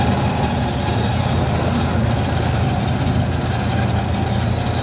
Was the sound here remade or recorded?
recorded